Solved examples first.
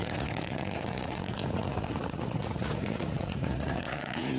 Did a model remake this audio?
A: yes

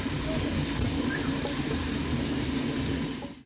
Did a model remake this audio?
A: no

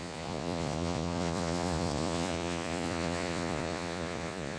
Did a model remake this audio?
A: yes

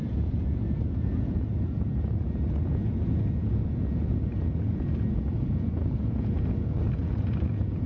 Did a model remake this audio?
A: yes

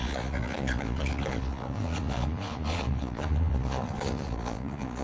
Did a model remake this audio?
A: yes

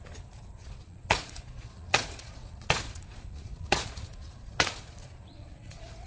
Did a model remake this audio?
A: yes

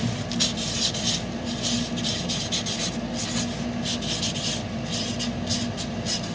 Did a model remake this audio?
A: no